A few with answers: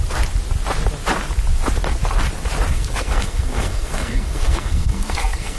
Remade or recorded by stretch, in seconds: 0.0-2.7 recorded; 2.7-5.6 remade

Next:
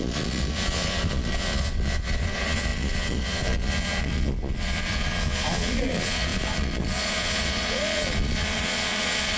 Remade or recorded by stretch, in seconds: 0.0-9.4 remade

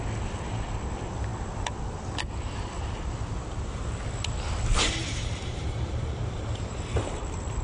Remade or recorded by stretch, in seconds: 0.0-5.0 recorded; 5.0-6.8 remade; 6.8-7.6 recorded